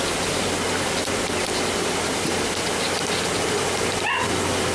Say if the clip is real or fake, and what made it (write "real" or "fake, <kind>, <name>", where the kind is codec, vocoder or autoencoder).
real